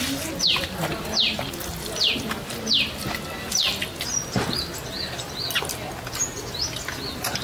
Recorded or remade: recorded